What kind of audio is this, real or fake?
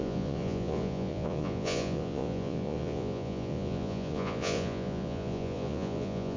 fake